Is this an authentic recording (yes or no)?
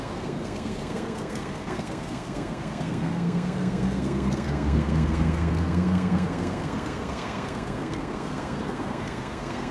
no